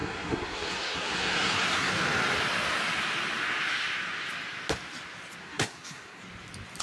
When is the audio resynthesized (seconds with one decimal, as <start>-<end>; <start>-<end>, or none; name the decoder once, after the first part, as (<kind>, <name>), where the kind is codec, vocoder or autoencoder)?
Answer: 0.0-1.9 (codec, SNAC); 5.4-6.2